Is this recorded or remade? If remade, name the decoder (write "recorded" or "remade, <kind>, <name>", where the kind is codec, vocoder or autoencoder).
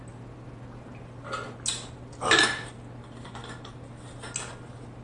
recorded